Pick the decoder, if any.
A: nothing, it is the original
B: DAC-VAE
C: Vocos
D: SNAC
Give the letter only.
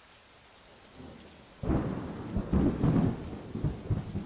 A